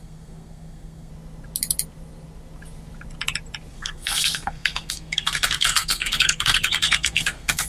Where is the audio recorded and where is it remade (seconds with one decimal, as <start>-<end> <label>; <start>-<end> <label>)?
0.0-1.1 remade; 1.1-3.7 recorded; 3.7-7.7 remade